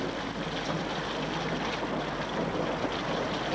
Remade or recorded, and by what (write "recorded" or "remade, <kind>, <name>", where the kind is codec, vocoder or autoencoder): recorded